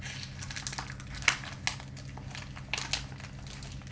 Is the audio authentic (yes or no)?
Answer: yes